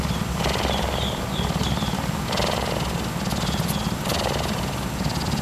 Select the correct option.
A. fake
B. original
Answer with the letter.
B